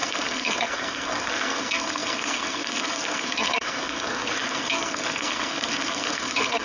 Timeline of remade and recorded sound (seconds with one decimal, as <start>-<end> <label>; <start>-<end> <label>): 0.0-6.6 remade

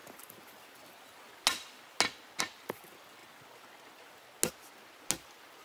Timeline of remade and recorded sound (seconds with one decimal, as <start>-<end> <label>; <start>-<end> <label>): 0.0-5.6 recorded

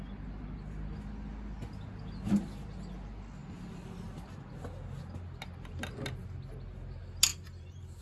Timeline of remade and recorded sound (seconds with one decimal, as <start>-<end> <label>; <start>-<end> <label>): 0.0-7.3 recorded; 7.3-8.0 remade

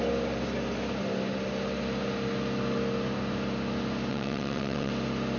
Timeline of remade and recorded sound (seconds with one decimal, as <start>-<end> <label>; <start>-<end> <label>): 0.0-4.1 recorded; 4.1-4.9 remade; 4.9-5.4 recorded

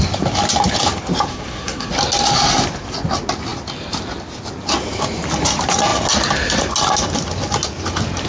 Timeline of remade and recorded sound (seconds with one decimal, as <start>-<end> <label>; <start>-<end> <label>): 0.0-1.3 recorded; 1.3-1.9 remade; 1.9-8.3 recorded

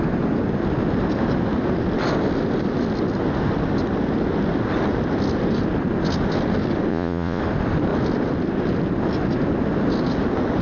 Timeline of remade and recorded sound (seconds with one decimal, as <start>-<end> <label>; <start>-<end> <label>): 0.0-6.9 recorded; 6.9-7.4 remade; 7.4-10.6 recorded

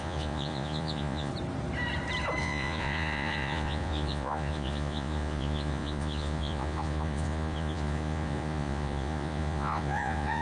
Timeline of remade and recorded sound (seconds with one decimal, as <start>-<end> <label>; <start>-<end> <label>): 0.0-1.3 remade; 1.3-2.4 recorded; 2.4-10.4 remade

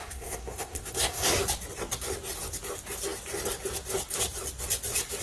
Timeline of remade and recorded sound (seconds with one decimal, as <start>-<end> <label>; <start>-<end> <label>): 0.0-1.3 remade; 1.3-5.2 recorded